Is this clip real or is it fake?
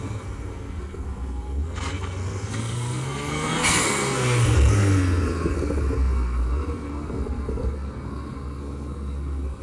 fake